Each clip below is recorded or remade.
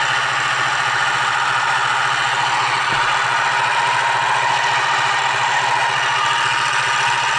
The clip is recorded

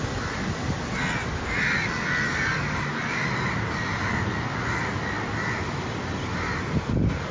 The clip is recorded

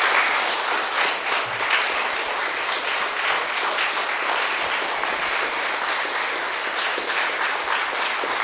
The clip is recorded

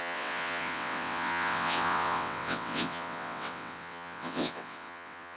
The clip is remade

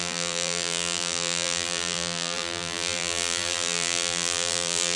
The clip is remade